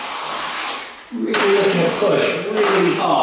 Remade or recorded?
recorded